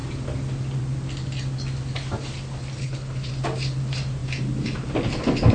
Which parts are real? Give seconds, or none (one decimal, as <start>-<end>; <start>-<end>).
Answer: 0.0-2.8; 3.3-5.5